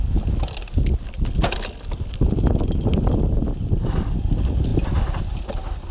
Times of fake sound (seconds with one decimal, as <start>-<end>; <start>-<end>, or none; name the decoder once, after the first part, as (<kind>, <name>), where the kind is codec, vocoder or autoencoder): none